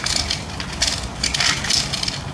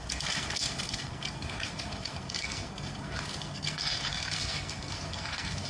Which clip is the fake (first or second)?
second